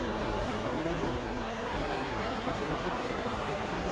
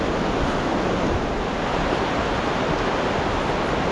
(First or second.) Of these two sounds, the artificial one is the first